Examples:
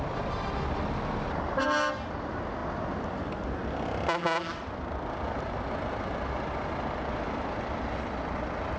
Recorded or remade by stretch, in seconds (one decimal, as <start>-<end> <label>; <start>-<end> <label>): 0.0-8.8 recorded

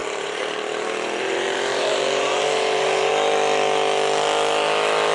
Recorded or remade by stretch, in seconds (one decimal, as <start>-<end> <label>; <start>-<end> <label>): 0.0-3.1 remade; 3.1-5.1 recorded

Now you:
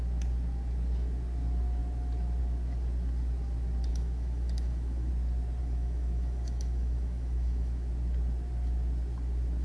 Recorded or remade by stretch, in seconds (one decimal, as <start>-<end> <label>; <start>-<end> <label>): 0.0-3.9 recorded; 3.9-5.1 remade; 5.1-5.6 recorded; 5.6-7.9 remade; 7.9-9.6 recorded

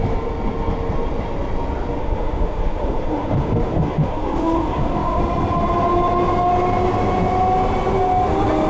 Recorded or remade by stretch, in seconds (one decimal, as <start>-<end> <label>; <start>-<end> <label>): 0.0-2.0 recorded; 2.0-5.2 remade; 5.2-8.7 recorded

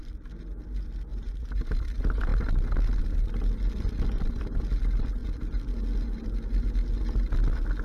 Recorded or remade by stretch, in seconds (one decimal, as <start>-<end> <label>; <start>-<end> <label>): 0.0-1.1 recorded; 1.1-1.8 remade; 1.8-7.8 recorded

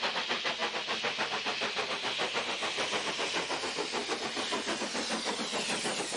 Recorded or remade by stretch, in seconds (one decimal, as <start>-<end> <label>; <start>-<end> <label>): 0.0-6.2 recorded